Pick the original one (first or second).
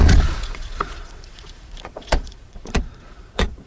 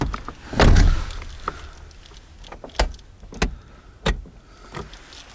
second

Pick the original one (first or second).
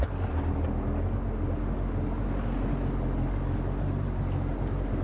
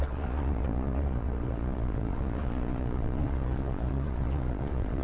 first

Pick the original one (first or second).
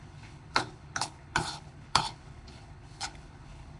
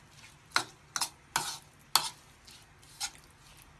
second